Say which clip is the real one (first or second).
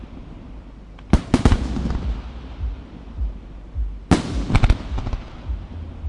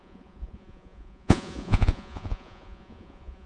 first